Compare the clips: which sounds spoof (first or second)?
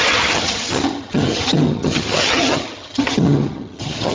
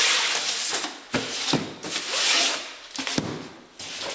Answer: first